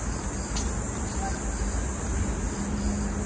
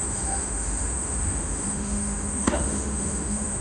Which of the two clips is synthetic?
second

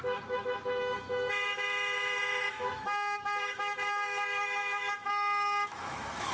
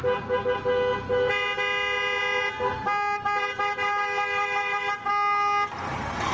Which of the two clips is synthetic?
first